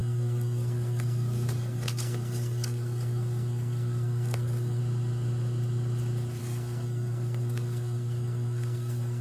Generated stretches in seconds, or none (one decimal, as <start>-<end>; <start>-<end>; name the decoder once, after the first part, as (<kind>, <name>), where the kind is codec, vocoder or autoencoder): 0.0-4.8 (codec, SNAC); 6.4-9.2